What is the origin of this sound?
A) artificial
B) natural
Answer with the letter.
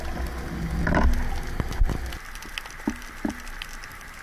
B